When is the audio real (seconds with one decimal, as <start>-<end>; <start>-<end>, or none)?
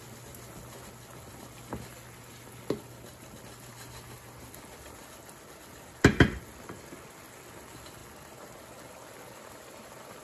0.0-10.2